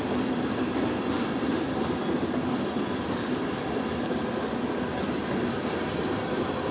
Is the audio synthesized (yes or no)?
no